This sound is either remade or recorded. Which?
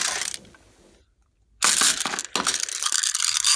recorded